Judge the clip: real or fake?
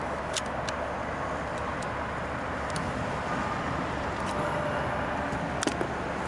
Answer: real